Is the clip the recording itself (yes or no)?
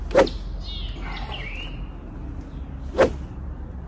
yes